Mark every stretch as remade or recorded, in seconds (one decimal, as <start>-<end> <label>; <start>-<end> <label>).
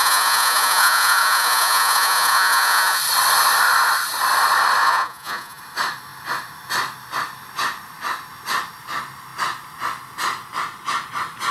0.0-3.0 remade; 3.0-4.8 recorded; 4.8-5.6 remade; 5.6-11.5 recorded